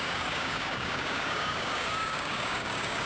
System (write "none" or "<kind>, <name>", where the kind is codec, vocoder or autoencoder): codec, DAC